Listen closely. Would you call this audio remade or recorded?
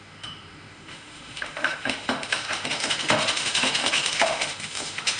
remade